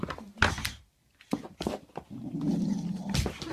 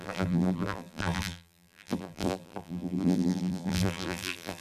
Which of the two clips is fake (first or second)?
second